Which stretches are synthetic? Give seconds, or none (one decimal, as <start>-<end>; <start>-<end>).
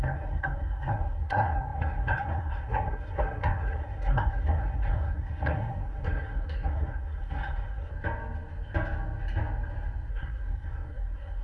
0.0-7.9; 10.1-11.4